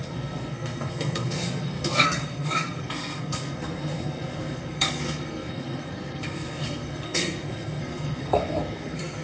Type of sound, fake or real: fake